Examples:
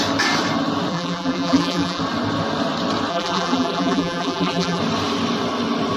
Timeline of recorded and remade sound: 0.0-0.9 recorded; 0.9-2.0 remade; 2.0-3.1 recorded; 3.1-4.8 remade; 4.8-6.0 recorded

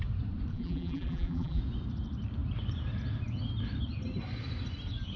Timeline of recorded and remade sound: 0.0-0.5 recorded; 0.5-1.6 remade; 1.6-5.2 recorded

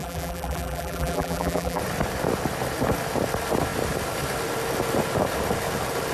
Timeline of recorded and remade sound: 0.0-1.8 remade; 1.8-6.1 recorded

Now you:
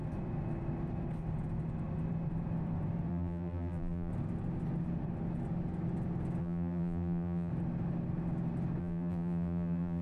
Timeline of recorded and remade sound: 0.0-3.1 recorded; 3.1-4.1 remade; 4.1-6.4 recorded; 6.4-7.5 remade; 7.5-8.8 recorded; 8.8-10.0 remade

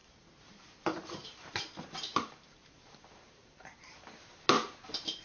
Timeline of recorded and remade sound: 0.0-1.5 remade; 1.5-2.1 recorded; 2.1-4.1 remade; 4.1-5.2 recorded

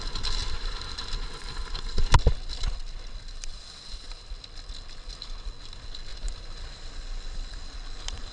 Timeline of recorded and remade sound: 0.0-0.4 recorded; 0.4-1.0 remade; 1.0-6.1 recorded; 6.1-6.8 remade; 6.8-8.3 recorded